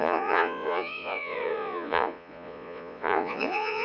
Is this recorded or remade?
remade